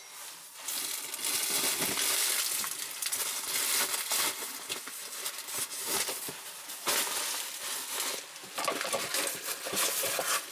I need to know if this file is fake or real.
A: real